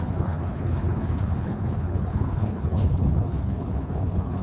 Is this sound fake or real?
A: fake